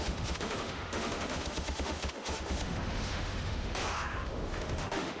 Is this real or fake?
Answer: fake